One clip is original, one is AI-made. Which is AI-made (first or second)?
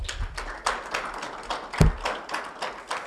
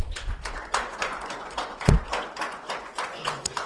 second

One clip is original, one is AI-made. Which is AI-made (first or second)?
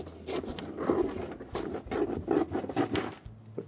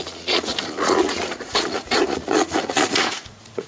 second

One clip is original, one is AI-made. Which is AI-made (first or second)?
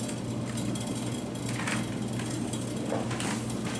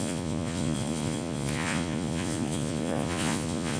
second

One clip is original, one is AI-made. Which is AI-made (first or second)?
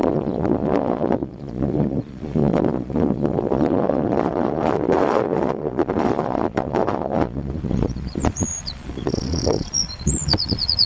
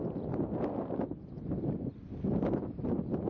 first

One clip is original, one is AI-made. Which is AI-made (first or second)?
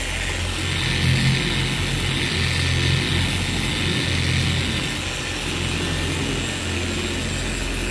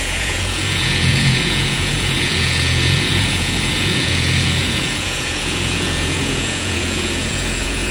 second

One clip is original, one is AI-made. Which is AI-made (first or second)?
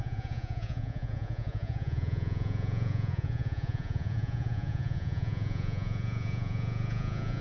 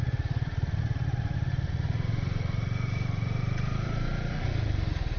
first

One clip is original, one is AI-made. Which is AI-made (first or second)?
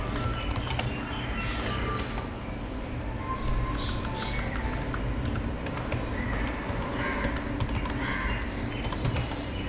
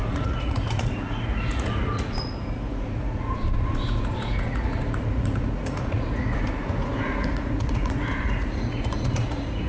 second